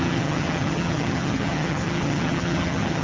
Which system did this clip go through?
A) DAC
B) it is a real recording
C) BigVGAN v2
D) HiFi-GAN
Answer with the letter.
D